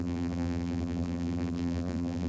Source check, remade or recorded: remade